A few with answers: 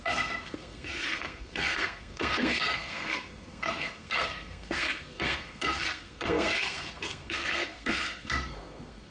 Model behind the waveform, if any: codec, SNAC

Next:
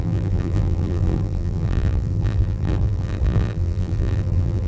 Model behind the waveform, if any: vocoder, BigVGAN v2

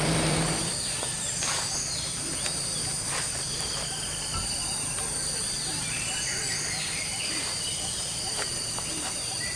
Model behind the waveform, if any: vocoder, BigVGAN v2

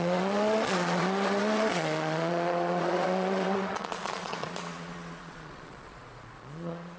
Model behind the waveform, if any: vocoder, Vocos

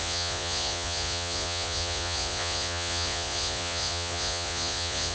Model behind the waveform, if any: vocoder, Vocos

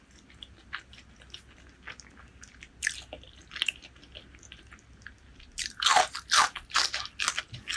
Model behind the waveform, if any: none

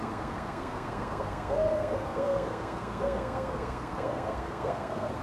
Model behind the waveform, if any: codec, SNAC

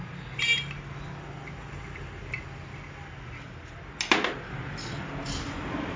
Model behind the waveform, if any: none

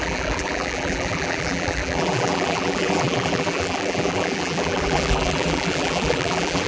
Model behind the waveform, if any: vocoder, BigVGAN v2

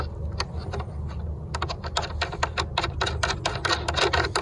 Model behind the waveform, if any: none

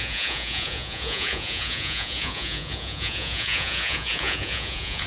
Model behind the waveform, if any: vocoder, Vocos